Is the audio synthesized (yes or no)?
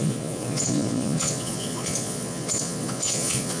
yes